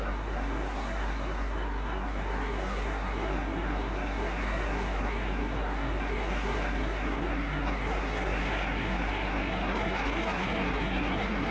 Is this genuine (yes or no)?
no